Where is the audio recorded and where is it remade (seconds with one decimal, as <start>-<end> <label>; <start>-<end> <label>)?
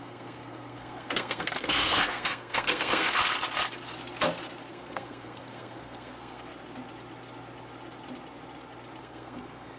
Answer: 0.0-3.2 remade; 3.2-4.7 recorded; 4.7-6.5 remade; 6.5-9.0 recorded; 9.0-9.8 remade